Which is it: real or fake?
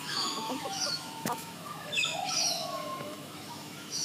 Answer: fake